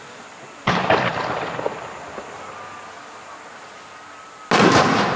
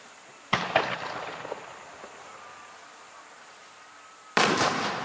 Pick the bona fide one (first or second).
first